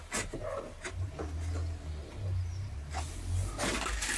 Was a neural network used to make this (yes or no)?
no